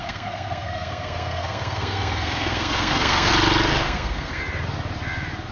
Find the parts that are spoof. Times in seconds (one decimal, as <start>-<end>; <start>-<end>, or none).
0.0-3.3; 3.7-4.4